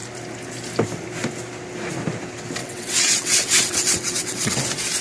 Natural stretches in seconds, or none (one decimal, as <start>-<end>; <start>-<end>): 0.0-2.6; 4.6-5.0

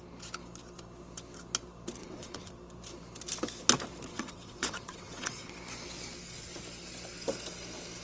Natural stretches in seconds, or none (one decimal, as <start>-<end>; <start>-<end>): 0.0-2.0; 2.5-4.1; 5.5-8.0